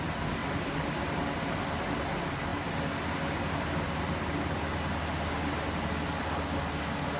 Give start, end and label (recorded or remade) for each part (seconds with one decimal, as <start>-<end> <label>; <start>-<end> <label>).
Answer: 0.0-0.4 recorded; 0.4-2.0 remade; 2.0-7.2 recorded